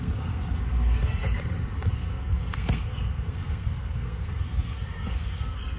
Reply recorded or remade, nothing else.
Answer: remade